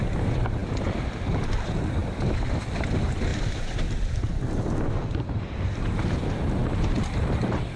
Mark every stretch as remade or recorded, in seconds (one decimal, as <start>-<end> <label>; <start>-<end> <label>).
0.0-7.8 recorded